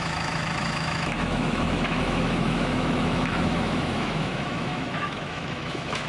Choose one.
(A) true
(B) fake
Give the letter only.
B